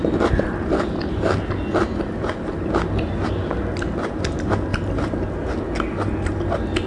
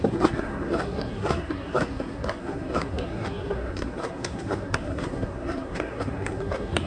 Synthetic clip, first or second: second